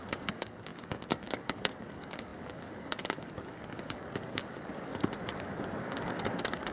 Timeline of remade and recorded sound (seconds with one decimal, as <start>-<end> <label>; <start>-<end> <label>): 0.0-4.9 remade; 4.9-5.8 recorded; 5.8-6.7 remade